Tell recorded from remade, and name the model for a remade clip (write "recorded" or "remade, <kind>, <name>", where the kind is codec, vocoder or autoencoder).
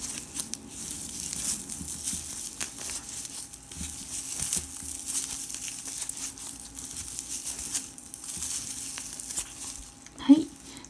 recorded